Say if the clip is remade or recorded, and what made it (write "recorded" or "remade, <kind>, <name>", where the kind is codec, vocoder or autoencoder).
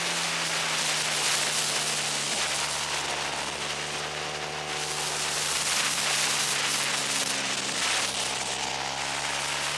recorded